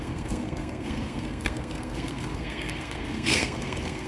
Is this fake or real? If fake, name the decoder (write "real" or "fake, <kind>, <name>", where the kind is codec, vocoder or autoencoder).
fake, codec, SNAC